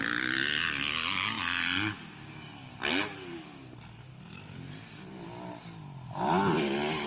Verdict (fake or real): real